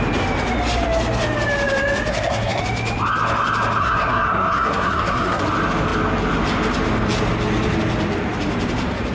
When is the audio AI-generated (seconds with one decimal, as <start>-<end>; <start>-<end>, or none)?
2.1-2.6; 3.8-5.4